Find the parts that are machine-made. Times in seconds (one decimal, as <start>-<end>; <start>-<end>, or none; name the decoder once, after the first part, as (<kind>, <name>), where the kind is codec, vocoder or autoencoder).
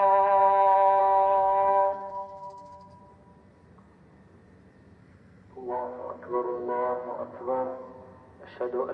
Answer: 1.0-3.0 (codec, SNAC); 5.0-7.9